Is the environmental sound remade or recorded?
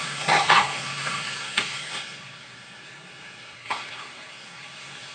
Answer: remade